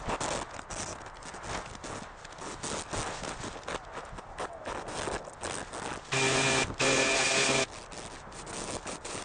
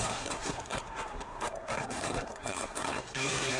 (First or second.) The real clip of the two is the first